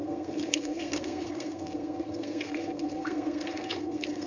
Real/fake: fake